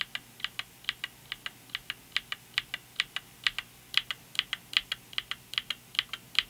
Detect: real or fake real